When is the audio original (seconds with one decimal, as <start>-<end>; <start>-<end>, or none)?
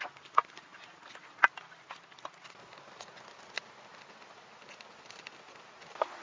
0.0-6.2